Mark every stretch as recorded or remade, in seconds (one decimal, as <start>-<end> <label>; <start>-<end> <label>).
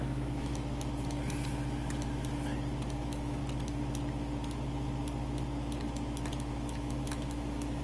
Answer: 0.0-0.5 remade; 0.5-3.0 recorded; 3.0-3.4 remade; 3.4-6.5 recorded; 6.5-7.8 remade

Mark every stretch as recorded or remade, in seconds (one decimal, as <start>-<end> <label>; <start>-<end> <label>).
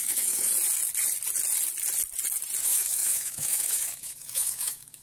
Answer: 0.0-0.5 remade; 0.5-2.6 recorded; 2.6-5.0 remade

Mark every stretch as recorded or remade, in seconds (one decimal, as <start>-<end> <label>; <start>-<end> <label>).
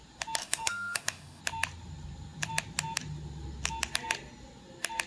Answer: 0.0-0.4 recorded; 0.4-1.4 remade; 1.4-5.1 recorded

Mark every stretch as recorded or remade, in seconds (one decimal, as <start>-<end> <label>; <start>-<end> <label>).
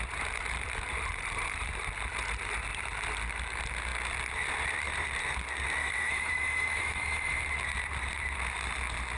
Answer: 0.0-5.8 recorded; 5.8-7.4 remade; 7.4-9.2 recorded